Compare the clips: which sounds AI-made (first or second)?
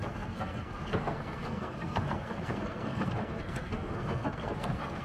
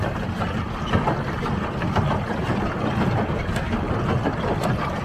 first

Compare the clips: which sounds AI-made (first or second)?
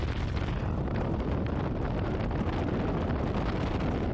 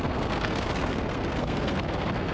second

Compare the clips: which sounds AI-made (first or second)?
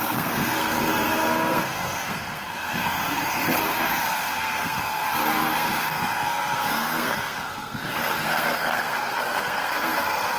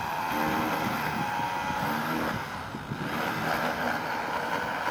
first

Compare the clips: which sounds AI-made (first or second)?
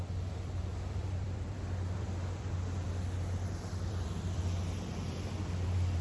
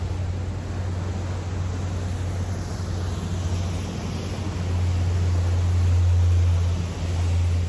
first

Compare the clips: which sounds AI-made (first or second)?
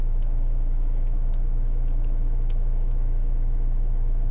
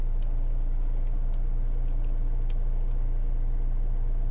first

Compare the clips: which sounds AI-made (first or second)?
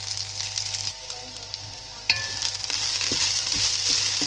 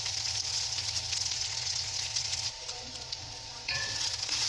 second